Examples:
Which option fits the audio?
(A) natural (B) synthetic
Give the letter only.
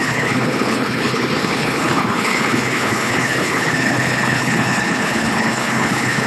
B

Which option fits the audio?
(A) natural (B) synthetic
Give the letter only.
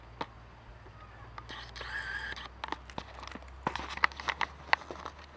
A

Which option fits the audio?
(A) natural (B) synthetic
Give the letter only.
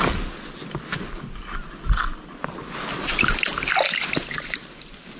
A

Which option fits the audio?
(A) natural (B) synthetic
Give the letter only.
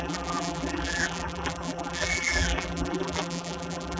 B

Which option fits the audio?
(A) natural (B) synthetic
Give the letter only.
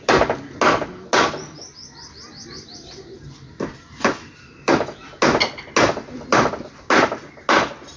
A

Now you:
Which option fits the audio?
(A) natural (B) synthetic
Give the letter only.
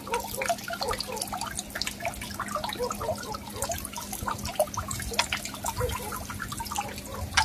A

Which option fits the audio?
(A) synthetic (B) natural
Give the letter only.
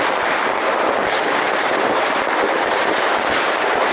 B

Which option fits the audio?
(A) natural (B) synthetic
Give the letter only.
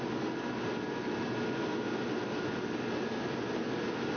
A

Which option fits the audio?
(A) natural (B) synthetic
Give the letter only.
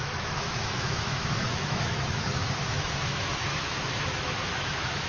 B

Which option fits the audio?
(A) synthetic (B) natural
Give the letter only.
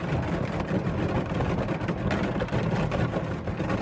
B